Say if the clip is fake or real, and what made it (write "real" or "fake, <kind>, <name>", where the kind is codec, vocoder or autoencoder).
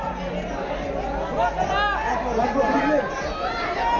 real